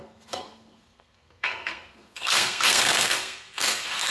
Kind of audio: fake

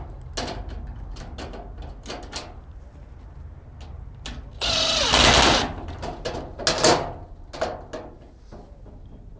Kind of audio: real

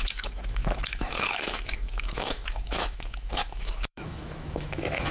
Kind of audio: fake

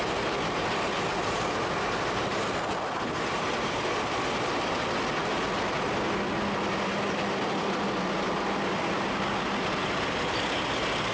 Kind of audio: real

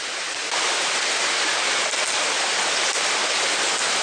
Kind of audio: real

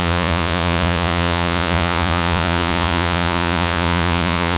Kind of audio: fake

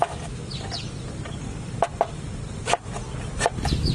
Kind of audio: real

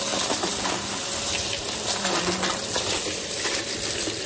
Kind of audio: real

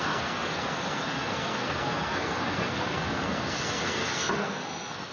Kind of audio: fake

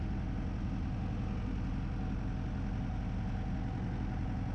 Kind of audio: real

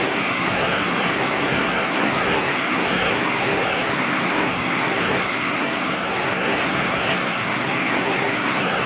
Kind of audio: fake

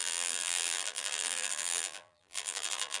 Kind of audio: fake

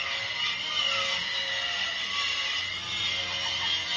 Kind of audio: real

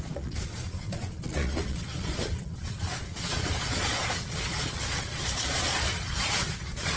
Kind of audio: fake